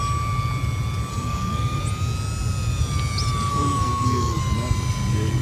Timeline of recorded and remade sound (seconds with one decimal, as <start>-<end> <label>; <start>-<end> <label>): 0.0-1.1 recorded; 1.1-1.8 remade; 1.8-3.5 recorded; 3.5-4.4 remade; 4.4-5.4 recorded